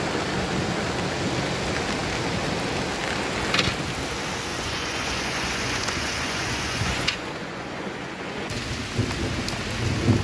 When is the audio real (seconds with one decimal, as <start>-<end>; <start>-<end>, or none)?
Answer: 0.0-4.5; 8.5-10.2